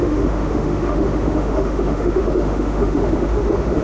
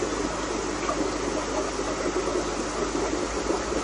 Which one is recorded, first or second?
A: second